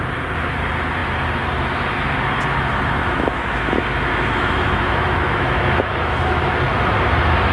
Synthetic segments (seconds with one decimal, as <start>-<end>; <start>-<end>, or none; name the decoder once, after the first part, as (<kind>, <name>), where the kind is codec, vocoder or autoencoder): 3.0-6.4 (autoencoder, DAC-VAE)